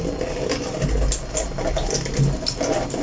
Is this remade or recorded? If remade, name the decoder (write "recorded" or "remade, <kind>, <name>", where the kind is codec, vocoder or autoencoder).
recorded